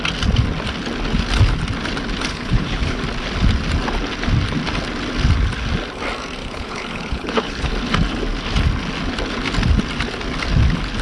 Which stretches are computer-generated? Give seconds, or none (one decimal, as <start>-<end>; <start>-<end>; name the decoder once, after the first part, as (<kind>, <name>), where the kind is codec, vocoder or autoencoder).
2.3-3.0 (codec, HILCodec); 6.4-7.7